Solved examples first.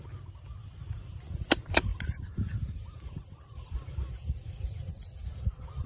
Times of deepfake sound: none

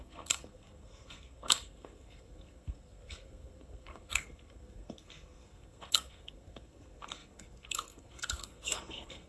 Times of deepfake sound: 0.0-9.3 (codec, SNAC)

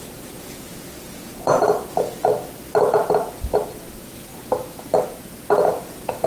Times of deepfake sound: 0.0-2.3 (vocoder, Vocos); 2.8-4.3; 5.0-6.3

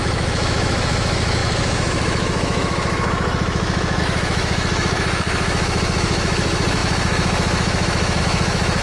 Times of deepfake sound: 0.0-8.8 (autoencoder, DAC-VAE)

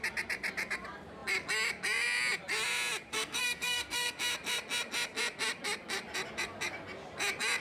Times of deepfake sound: 3.1-4.2 (codec, SNAC)

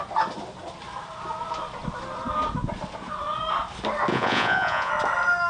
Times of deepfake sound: 4.1-4.9 (vocoder, Vocos)